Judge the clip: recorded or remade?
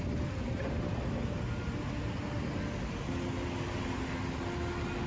recorded